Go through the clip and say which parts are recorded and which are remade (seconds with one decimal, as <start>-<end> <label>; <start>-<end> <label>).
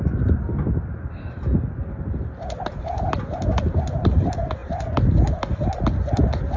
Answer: 0.0-6.6 recorded